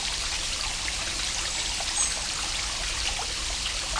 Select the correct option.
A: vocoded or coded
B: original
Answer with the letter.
B